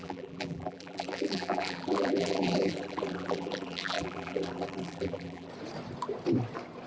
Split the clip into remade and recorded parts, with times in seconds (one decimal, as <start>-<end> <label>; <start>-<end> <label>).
0.0-5.5 remade; 5.5-6.9 recorded